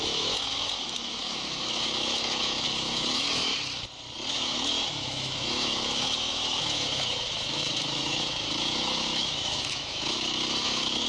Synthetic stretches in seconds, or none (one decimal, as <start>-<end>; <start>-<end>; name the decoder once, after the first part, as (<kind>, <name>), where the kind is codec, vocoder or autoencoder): 0.0-3.5 (autoencoder, DAC-VAE); 4.3-11.1